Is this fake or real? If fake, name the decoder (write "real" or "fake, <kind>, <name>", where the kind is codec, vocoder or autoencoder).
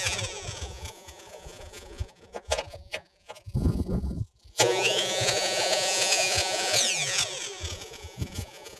fake, vocoder, Vocos